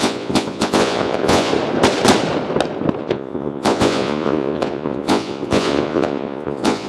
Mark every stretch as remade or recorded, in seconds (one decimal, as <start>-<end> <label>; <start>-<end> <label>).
0.0-1.5 remade; 1.5-3.0 recorded; 3.0-6.9 remade